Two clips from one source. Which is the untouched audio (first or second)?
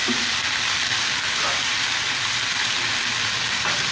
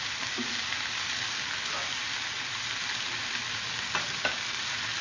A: second